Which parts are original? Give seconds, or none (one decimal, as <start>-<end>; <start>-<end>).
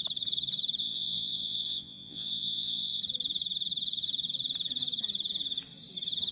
0.0-0.8; 3.0-6.3